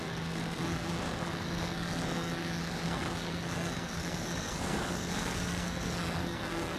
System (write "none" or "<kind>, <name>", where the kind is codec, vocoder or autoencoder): codec, SNAC